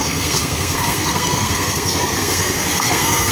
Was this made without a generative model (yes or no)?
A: no